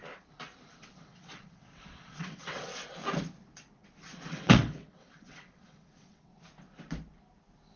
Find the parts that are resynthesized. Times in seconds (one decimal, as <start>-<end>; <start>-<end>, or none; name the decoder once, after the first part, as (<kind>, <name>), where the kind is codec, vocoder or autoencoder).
0.7-2.7 (vocoder, WaveNeXt); 4.3-6.3